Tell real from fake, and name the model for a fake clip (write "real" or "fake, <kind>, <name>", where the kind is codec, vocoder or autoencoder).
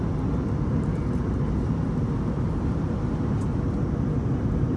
real